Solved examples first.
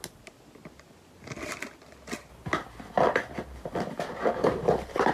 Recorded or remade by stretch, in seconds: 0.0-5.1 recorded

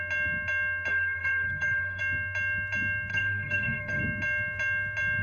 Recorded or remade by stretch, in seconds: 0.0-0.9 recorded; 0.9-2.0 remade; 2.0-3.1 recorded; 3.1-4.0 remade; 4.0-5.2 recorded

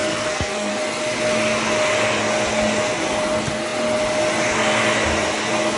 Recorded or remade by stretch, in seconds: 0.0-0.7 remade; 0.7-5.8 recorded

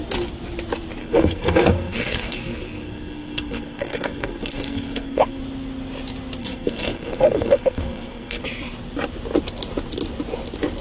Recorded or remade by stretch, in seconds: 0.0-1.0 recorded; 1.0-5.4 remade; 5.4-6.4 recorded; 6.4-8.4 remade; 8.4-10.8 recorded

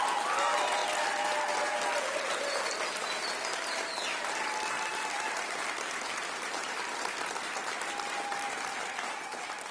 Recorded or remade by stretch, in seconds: 0.0-9.7 recorded